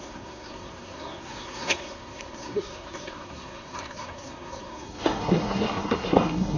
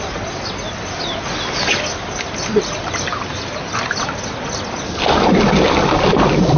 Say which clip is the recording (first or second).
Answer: second